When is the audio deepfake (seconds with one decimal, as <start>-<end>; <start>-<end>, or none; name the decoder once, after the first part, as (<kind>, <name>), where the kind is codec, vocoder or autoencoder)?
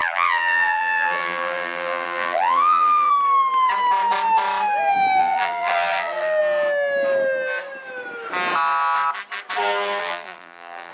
0.0-3.1 (vocoder, BigVGAN v2); 5.2-6.4; 10.0-10.9